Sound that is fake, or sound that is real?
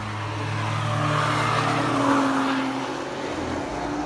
real